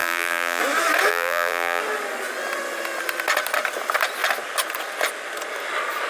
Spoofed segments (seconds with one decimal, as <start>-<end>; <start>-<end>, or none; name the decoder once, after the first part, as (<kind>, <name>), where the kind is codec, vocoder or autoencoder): 0.0-0.6 (vocoder, BigVGAN v2); 1.1-1.8